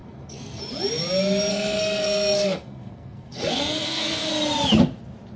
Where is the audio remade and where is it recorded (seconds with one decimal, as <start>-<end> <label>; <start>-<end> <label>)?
0.0-0.6 remade; 0.6-1.5 recorded; 1.5-4.3 remade; 4.3-5.4 recorded